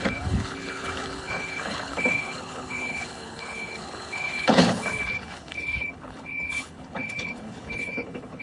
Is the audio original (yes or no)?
no